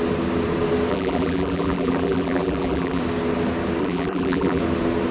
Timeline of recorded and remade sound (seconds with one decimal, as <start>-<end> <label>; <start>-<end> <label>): 0.0-0.9 recorded; 0.9-3.0 remade; 3.0-3.8 recorded; 3.8-4.6 remade; 4.6-5.1 recorded